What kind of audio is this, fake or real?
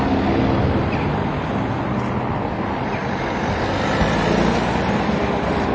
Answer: real